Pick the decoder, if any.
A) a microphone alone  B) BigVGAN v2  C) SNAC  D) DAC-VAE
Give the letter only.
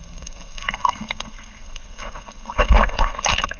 C